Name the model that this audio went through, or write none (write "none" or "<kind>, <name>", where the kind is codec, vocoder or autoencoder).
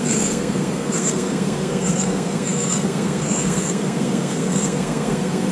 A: codec, SNAC